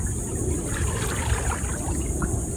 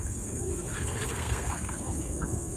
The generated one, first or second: second